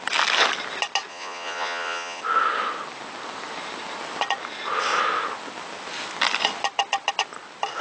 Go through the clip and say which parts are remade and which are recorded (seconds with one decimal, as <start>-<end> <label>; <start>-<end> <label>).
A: 0.0-1.1 recorded; 1.1-2.2 remade; 2.2-7.8 recorded